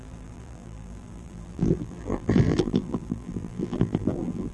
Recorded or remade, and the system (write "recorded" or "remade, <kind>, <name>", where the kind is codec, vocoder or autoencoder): remade, vocoder, BigVGAN v2